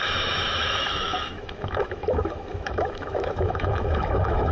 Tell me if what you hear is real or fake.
fake